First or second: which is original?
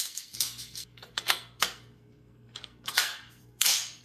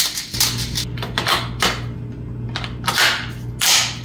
second